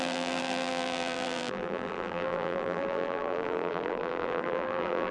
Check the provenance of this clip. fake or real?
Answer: fake